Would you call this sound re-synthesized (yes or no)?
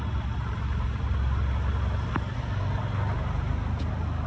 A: no